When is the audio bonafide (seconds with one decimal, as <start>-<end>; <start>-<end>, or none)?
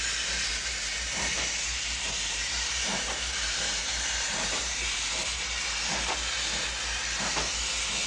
0.0-0.5; 5.4-8.1